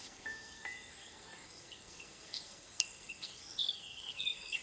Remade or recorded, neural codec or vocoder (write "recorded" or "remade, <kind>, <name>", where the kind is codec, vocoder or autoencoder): remade, codec, SNAC